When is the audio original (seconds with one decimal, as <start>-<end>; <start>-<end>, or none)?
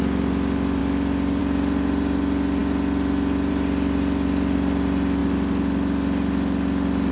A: 0.0-7.1